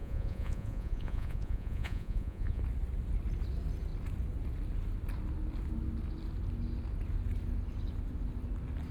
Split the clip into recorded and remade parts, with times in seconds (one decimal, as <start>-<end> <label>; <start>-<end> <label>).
0.0-2.6 remade; 2.6-8.9 recorded